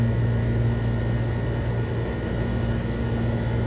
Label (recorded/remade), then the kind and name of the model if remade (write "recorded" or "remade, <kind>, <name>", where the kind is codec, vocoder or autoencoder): recorded